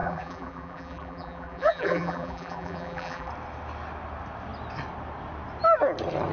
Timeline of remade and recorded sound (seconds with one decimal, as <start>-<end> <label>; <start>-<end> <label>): 0.0-3.3 remade; 3.3-6.3 recorded